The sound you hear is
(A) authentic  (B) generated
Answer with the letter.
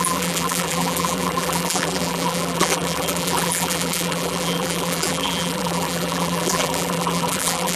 B